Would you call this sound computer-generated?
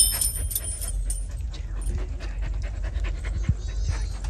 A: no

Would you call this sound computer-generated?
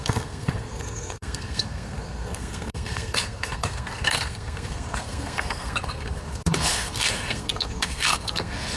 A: yes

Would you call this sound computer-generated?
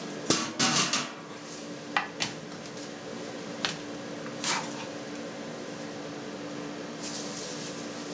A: no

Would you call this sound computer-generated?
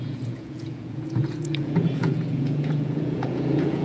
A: yes